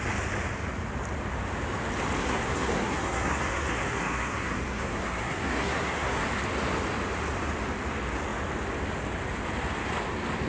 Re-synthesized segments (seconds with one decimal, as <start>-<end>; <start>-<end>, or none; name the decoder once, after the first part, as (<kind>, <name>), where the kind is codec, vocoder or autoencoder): 2.2-6.2 (codec, SNAC)